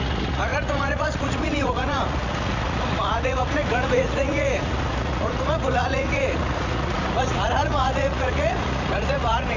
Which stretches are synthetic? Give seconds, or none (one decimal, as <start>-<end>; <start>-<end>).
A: 0.0-9.6

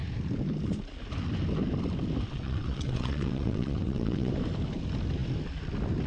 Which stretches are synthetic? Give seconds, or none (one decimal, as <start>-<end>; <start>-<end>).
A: 2.3-4.3

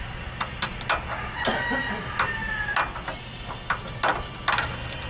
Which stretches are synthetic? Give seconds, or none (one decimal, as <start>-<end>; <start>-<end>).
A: none

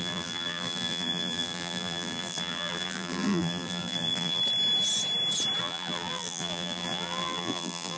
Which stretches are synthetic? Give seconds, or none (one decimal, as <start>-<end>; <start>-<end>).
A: 0.0-4.4; 5.6-8.0

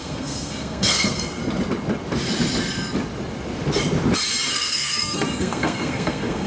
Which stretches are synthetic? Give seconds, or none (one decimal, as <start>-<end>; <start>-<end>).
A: 0.0-1.4; 4.5-6.5

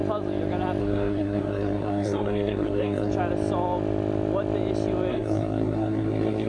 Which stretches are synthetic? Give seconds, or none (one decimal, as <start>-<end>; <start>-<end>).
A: 0.8-3.1; 5.1-6.5